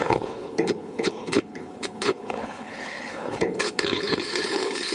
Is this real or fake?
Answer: fake